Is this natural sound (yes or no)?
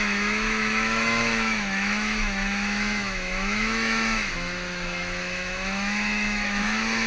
no